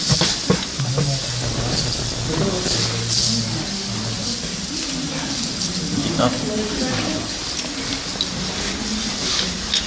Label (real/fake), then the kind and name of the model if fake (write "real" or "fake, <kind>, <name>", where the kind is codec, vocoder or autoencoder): real